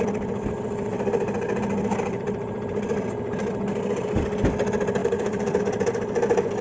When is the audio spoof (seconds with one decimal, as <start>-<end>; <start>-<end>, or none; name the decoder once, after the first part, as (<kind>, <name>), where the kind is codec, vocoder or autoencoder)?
1.9-2.7 (vocoder, BigVGAN v2); 3.7-4.3; 5.0-5.6